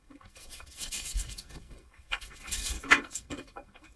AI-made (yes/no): yes